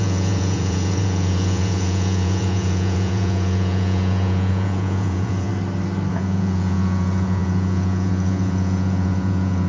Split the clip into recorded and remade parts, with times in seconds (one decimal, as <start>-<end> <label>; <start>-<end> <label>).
0.0-5.5 remade; 5.5-6.1 recorded; 6.1-9.7 remade